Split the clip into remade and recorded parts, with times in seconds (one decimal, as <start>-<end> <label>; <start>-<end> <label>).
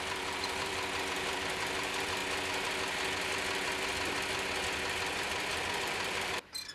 0.0-2.2 remade; 2.2-5.8 recorded; 5.8-6.7 remade